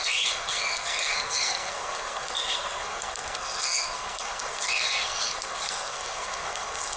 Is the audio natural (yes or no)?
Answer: no